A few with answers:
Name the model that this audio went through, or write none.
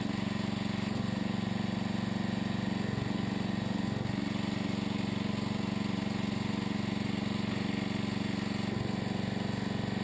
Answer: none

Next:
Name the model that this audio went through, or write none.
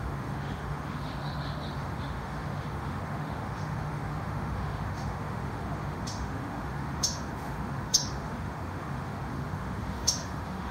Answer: autoencoder, DAC-VAE